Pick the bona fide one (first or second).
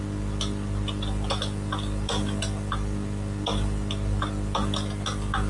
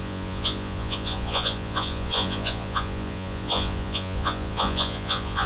first